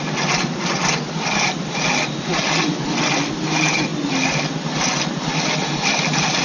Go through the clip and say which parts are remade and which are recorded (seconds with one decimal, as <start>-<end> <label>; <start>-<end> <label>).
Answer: 0.0-6.4 recorded